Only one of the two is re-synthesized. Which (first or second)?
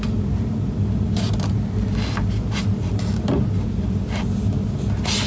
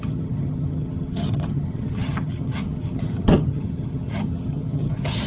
second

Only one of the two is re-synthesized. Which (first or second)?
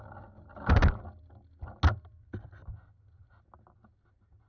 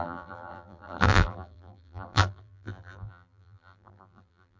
second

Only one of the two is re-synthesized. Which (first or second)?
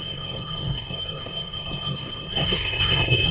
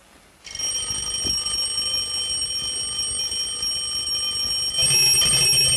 first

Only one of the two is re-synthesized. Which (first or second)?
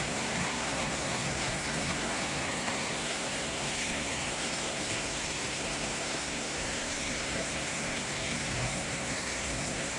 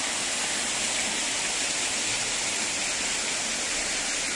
first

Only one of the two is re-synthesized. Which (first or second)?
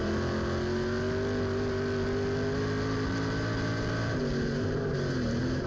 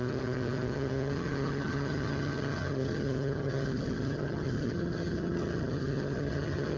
second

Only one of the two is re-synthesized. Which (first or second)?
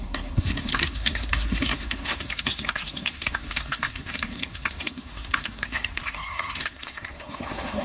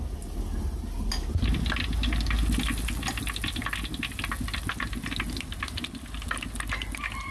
first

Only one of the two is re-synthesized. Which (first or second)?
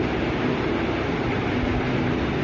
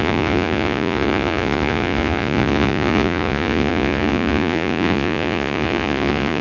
second